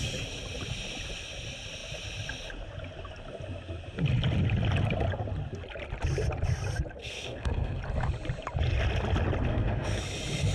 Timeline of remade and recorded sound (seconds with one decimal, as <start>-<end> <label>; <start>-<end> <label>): 0.0-7.0 recorded; 7.0-7.8 remade; 7.8-9.5 recorded; 9.5-10.0 remade; 10.0-10.5 recorded